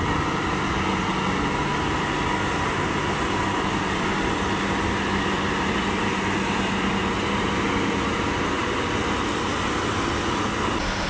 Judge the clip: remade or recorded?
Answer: recorded